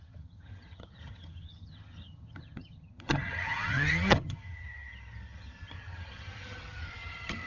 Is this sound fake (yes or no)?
yes